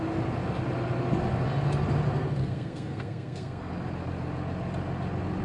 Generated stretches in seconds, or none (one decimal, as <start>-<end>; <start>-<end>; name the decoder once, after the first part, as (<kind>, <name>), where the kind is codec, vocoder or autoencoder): 2.4-3.7 (codec, SNAC)